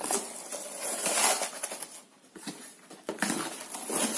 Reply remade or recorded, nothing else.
recorded